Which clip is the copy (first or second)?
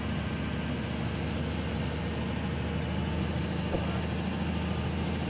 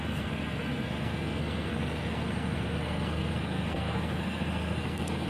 second